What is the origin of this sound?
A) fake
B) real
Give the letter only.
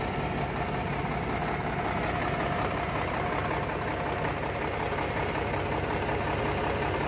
B